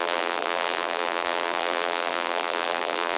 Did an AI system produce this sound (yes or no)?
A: yes